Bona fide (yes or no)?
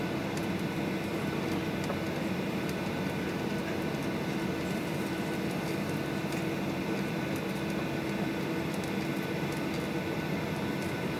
yes